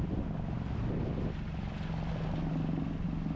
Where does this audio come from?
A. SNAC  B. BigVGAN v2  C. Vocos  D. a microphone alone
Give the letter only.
D